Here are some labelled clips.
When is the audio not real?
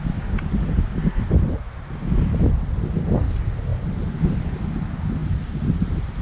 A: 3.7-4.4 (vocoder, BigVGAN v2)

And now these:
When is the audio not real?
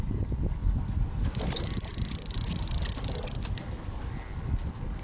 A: none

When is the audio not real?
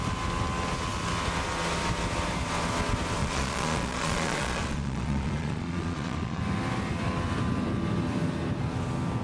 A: 3.2-6.4 (vocoder, Vocos)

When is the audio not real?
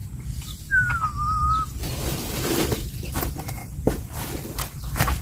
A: 3.6-5.2 (vocoder, BigVGAN v2)